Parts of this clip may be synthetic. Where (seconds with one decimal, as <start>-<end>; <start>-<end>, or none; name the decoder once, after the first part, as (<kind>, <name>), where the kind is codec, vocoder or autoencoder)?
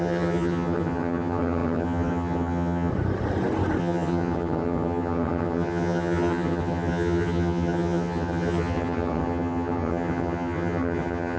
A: 0.0-2.9 (vocoder, HiFi-GAN); 3.8-11.4